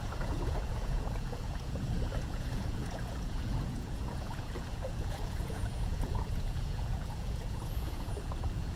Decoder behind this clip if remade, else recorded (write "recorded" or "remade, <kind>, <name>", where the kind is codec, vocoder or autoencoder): remade, vocoder, Vocos